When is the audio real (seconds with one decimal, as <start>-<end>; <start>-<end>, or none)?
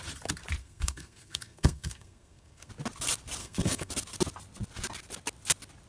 0.0-0.6; 2.7-3.4; 3.9-5.9